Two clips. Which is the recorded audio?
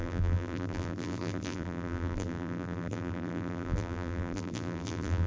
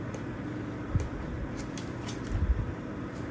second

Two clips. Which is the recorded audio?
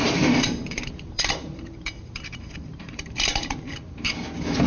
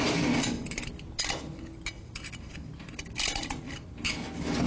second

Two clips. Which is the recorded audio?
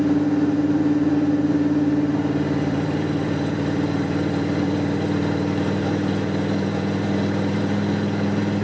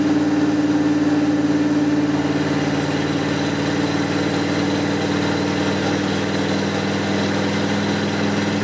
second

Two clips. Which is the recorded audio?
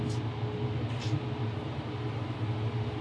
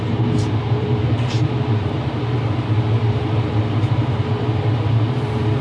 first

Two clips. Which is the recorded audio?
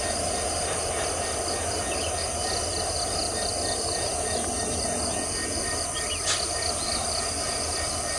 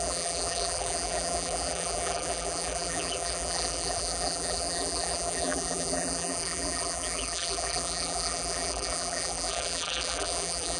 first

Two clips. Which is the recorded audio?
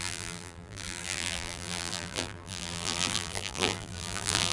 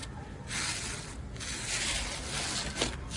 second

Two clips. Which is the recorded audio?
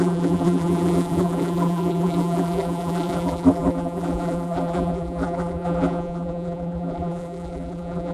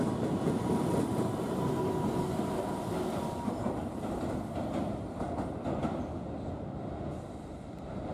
second